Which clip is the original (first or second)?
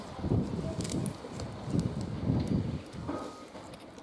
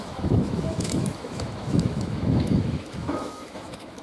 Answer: first